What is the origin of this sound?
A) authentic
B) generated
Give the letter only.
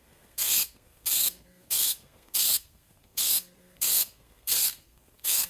B